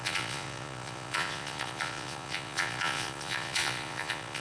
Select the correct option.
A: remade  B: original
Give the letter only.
A